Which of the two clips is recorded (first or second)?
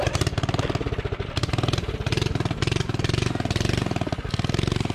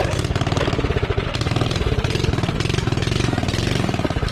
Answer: first